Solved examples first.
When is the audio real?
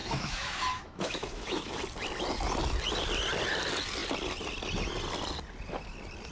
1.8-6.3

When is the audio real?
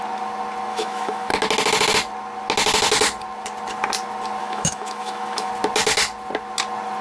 0.0-0.7; 1.3-4.4; 5.5-7.0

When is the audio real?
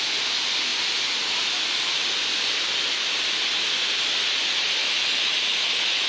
0.0-4.8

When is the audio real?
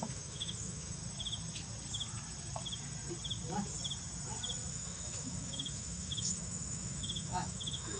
1.0-4.7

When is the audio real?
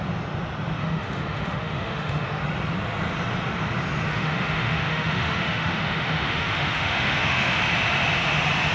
0.0-0.8; 2.4-4.1; 7.6-8.7